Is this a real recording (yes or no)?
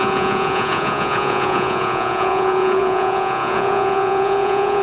no